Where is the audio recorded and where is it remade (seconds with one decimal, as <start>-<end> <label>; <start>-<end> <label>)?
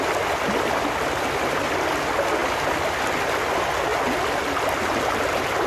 0.0-5.7 recorded